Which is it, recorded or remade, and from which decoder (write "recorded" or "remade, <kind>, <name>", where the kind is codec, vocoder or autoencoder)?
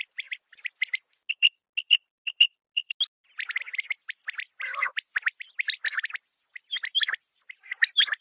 recorded